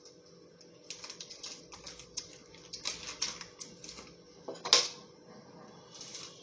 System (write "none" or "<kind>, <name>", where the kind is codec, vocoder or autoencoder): none